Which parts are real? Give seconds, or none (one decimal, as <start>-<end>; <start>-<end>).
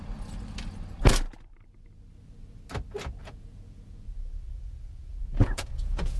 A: 0.0-3.2